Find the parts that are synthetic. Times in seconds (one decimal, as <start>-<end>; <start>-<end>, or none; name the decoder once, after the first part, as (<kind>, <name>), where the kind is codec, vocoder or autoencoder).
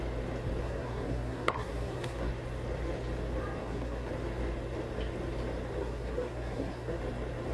0.6-2.3 (codec, SNAC); 3.6-4.1; 5.8-7.0